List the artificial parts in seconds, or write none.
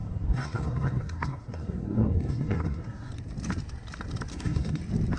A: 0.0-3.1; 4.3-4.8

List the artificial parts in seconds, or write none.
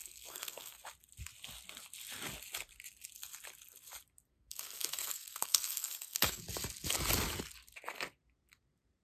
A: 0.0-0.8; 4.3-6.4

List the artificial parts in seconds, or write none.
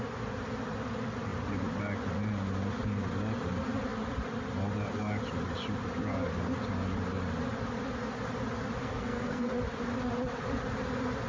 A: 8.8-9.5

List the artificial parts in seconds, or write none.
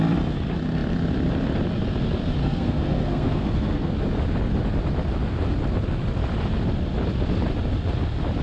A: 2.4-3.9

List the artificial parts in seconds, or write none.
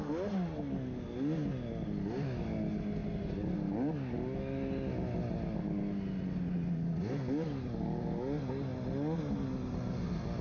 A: none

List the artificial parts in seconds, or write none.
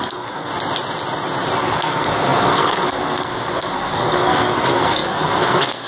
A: 0.0-0.5; 1.6-5.9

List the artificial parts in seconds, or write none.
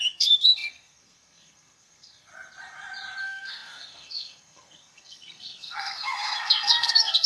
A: 0.0-2.3; 3.2-7.3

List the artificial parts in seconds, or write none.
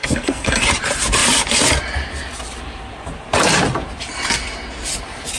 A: 0.0-0.6